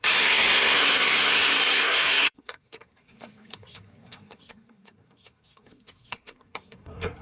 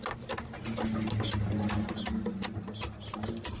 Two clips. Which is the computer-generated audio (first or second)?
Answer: first